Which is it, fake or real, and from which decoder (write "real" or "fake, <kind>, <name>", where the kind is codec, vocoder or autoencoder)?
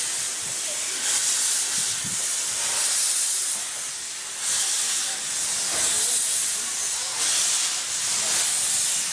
real